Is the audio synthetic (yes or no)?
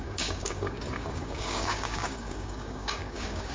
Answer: yes